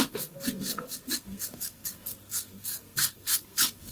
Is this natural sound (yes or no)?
no